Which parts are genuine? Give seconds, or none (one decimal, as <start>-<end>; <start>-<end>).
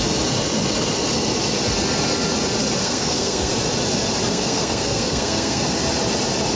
0.0-2.8; 3.5-4.3; 5.6-6.6